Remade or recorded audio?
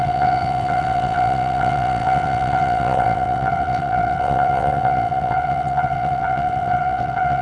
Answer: remade